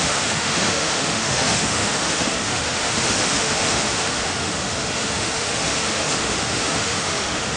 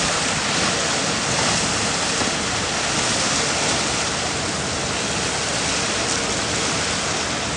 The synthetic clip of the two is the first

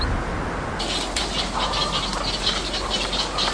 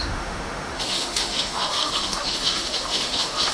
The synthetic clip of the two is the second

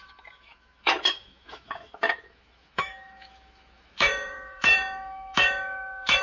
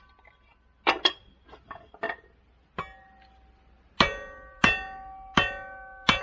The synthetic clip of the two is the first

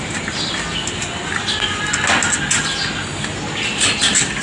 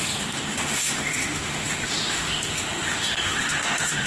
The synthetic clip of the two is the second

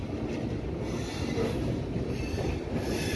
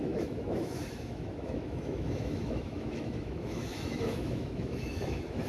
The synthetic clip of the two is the second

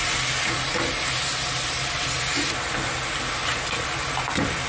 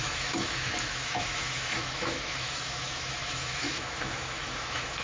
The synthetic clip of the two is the second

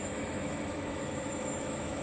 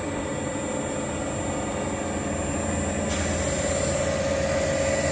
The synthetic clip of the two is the first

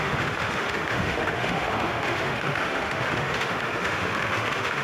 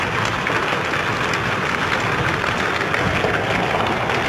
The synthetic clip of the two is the first